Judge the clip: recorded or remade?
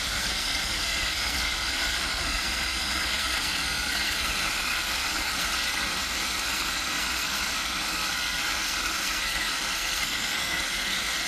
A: remade